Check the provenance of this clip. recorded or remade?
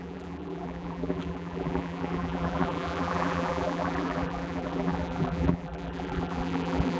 remade